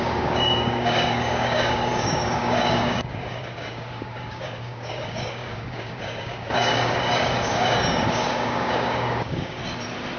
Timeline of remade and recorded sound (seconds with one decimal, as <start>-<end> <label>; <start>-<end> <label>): 0.0-9.6 remade; 9.6-10.2 recorded